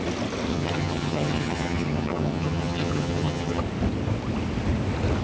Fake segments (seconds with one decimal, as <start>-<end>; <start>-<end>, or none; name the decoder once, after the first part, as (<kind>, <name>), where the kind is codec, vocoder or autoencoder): 0.5-3.6 (vocoder, HiFi-GAN)